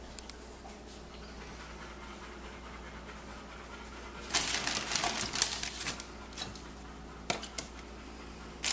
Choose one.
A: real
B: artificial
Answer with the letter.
A